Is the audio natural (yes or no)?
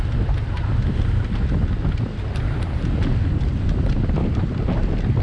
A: yes